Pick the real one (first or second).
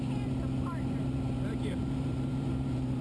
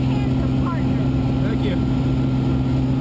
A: second